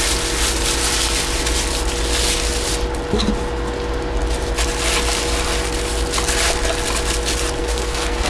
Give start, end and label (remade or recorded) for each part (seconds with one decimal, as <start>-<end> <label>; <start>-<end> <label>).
0.0-7.6 recorded; 7.6-8.3 remade